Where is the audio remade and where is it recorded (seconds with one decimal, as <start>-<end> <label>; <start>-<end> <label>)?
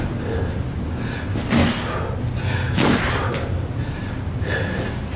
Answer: 0.0-3.2 recorded; 3.2-4.1 remade; 4.1-5.2 recorded